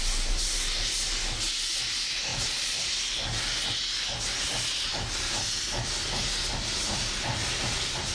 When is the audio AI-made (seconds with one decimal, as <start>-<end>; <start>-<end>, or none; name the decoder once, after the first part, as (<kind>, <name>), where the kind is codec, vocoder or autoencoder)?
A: 2.3-2.9 (vocoder, BigVGAN v2); 4.9-5.6